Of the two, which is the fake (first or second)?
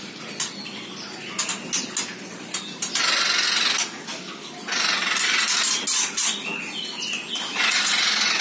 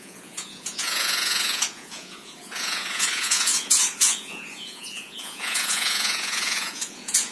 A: second